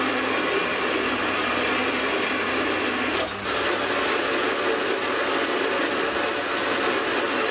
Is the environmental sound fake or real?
real